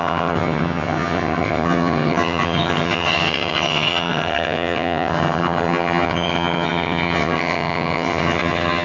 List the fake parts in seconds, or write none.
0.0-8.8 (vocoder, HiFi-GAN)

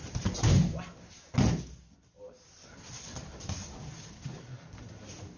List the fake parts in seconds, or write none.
none

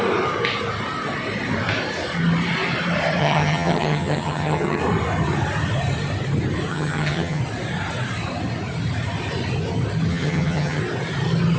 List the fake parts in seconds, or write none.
3.2-4.8 (vocoder, HiFi-GAN); 6.7-7.4; 10.1-10.8

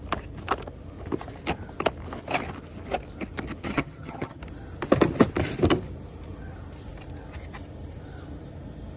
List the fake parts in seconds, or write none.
3.6-4.4 (vocoder, HiFi-GAN)

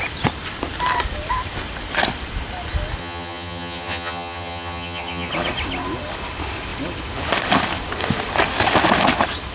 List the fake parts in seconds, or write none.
3.0-5.3 (vocoder, HiFi-GAN)

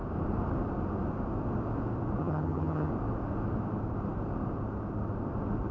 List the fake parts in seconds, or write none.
2.2-2.9 (vocoder, HiFi-GAN)

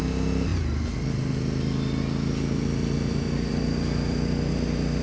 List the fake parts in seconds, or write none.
none

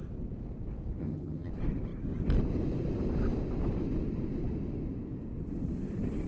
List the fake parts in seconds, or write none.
1.0-1.5 (vocoder, HiFi-GAN)